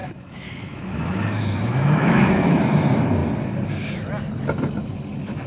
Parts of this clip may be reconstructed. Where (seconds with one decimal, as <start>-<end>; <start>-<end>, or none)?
0.0-2.6